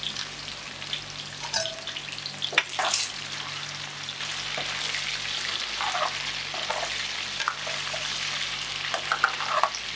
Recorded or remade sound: recorded